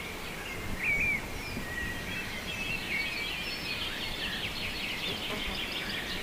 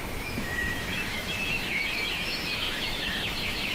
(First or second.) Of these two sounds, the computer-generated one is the second